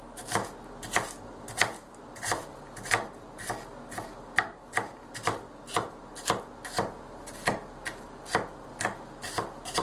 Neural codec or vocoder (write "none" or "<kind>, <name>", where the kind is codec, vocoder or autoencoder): none